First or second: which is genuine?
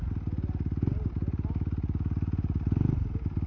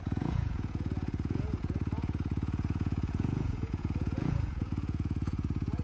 first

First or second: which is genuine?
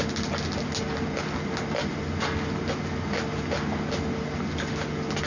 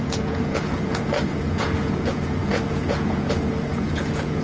first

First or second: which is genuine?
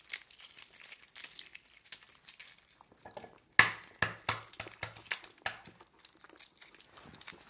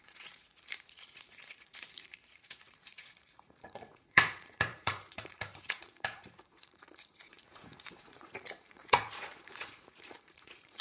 first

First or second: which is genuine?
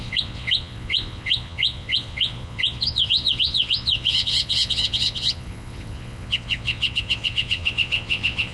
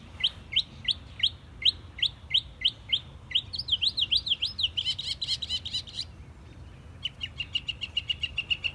second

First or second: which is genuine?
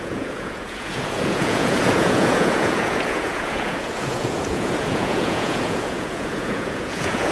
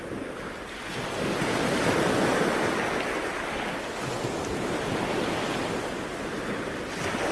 second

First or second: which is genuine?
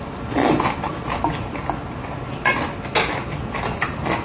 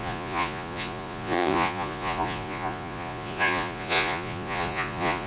first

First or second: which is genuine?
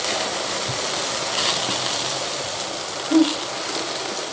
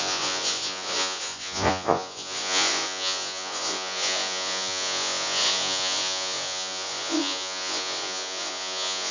first